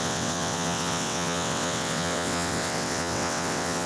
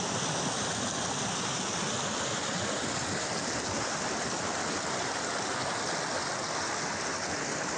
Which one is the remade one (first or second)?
first